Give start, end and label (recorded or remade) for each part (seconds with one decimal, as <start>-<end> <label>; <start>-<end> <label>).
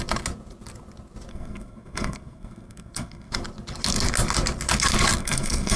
0.0-1.3 recorded; 1.3-3.3 remade; 3.3-5.2 recorded; 5.2-5.8 remade